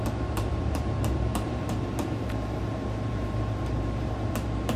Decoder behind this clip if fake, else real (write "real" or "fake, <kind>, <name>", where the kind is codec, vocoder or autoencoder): fake, vocoder, BigVGAN v2